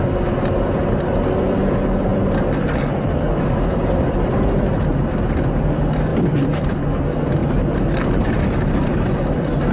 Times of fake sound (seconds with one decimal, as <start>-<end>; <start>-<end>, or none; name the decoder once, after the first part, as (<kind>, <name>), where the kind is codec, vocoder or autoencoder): none